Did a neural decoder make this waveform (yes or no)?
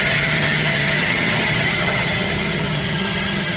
yes